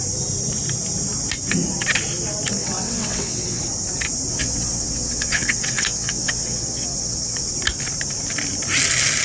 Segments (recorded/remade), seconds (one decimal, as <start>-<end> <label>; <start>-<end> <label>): 0.0-2.6 recorded; 2.6-3.6 remade; 3.6-4.3 recorded; 4.3-7.5 remade; 7.5-9.2 recorded

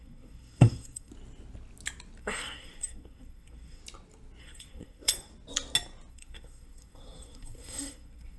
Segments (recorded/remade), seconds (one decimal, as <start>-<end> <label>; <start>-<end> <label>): 0.0-1.1 remade; 1.1-2.2 recorded; 2.2-3.8 remade; 3.8-4.4 recorded; 4.4-5.3 remade; 5.3-6.1 recorded; 6.1-8.4 remade

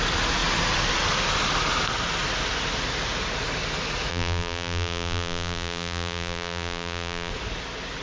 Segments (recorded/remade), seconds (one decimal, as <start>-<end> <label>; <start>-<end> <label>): 0.0-4.1 recorded; 4.1-7.3 remade; 7.3-8.0 recorded